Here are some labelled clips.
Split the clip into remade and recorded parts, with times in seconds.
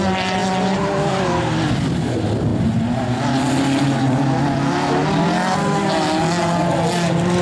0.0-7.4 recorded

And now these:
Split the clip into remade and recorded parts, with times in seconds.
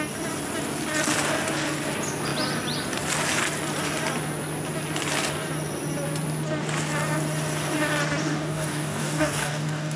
0.0-8.2 recorded; 8.2-10.0 remade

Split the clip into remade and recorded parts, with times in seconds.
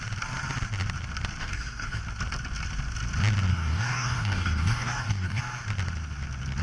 0.0-1.4 recorded; 1.4-2.0 remade; 2.0-3.5 recorded; 3.5-5.4 remade; 5.4-6.6 recorded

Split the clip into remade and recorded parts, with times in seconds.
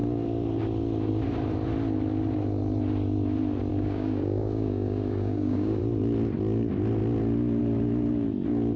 0.0-3.7 recorded; 3.7-5.8 remade; 5.8-8.8 recorded